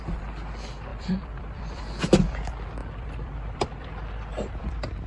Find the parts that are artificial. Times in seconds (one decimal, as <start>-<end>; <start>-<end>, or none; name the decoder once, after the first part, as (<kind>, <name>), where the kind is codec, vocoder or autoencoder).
0.9-2.0 (vocoder, BigVGAN v2); 2.8-4.6